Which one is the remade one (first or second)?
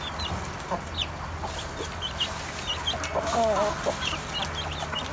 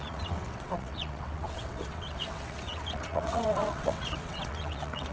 second